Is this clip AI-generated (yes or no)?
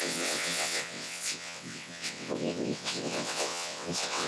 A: yes